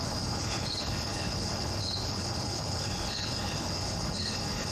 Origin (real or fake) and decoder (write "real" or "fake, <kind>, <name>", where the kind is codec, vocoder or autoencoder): fake, codec, HILCodec